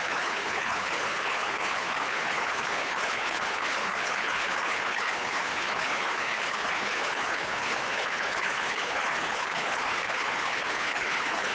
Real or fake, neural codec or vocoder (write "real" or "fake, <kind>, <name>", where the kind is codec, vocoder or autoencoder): fake, codec, HILCodec